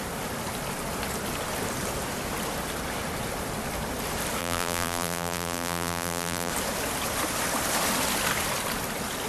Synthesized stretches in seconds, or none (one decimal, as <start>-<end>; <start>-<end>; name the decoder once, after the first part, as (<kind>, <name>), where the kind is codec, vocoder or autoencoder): 4.4-6.5 (vocoder, BigVGAN v2)